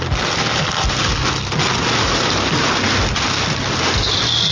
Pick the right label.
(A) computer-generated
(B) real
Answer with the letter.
B